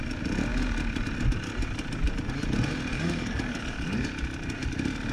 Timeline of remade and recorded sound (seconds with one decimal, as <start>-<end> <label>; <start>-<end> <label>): 0.0-2.9 recorded; 2.9-4.1 remade; 4.1-5.1 recorded